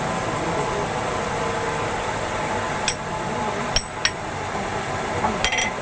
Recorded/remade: recorded